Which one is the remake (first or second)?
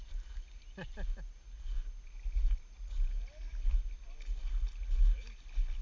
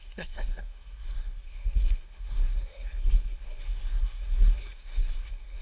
second